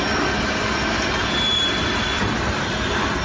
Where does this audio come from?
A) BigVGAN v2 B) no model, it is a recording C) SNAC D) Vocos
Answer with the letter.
B